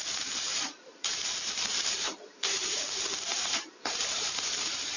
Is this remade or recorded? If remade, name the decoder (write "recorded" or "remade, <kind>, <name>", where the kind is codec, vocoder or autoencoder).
remade, vocoder, BigVGAN v2